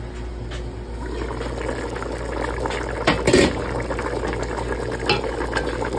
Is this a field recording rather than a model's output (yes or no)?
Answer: yes